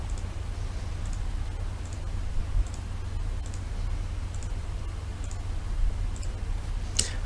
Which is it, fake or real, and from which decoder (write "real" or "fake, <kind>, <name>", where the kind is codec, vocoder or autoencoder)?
real